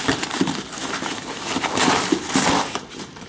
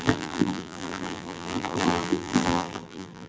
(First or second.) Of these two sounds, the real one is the first